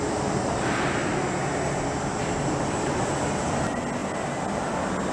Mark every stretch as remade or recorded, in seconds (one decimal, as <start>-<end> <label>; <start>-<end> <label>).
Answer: 0.0-5.1 recorded